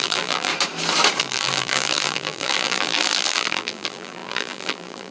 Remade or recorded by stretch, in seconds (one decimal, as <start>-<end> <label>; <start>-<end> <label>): 0.0-0.5 remade; 0.5-1.2 recorded; 1.2-5.1 remade